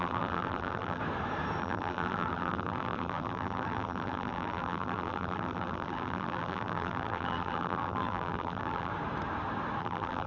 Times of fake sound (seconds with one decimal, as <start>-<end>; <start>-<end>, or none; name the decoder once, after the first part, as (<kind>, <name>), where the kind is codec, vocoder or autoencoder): 0.0-1.0 (vocoder, BigVGAN v2); 1.6-8.9; 9.8-10.3

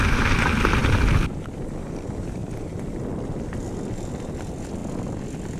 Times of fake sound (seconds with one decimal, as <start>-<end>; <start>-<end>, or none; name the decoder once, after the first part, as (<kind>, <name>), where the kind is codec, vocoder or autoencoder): none

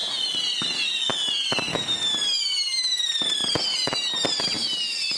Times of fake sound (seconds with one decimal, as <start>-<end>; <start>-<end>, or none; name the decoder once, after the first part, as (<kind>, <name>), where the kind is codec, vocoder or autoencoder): none

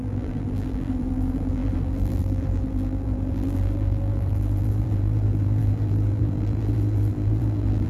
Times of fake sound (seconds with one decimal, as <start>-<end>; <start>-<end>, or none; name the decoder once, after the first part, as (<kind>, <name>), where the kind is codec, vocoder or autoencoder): 0.0-7.9 (vocoder, BigVGAN v2)

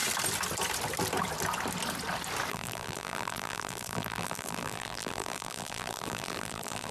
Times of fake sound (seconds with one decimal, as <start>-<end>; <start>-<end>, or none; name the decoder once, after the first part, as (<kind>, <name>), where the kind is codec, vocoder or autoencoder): 2.5-6.9 (vocoder, BigVGAN v2)

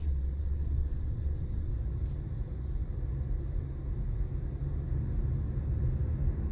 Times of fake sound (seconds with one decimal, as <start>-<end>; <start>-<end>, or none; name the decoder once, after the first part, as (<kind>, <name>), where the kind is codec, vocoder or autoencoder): 0.0-1.7 (vocoder, WaveNeXt)